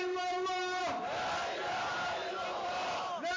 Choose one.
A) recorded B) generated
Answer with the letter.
A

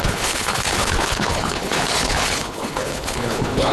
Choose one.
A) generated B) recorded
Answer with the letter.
A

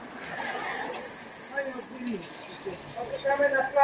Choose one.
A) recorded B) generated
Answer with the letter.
A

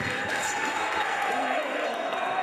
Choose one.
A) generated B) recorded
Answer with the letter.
A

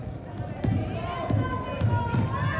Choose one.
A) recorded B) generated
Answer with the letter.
A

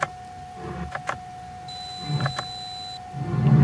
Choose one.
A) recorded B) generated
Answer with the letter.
A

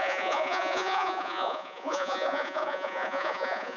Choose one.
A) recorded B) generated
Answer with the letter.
B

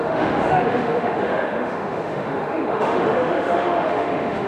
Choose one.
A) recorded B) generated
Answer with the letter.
B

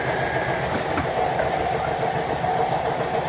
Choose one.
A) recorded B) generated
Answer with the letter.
B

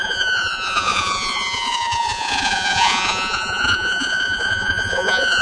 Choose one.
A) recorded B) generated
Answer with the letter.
B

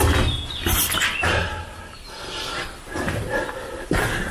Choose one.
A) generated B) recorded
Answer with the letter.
B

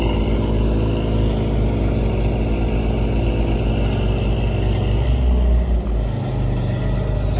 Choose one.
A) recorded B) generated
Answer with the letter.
A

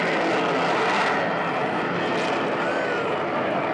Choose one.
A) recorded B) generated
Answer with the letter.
A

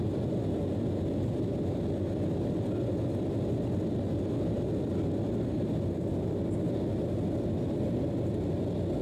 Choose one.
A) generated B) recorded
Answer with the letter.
B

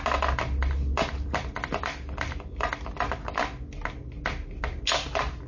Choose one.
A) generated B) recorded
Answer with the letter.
B